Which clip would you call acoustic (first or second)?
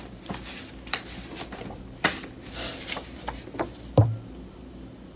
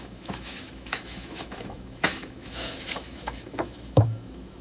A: first